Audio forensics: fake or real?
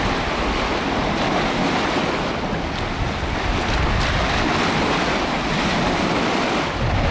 real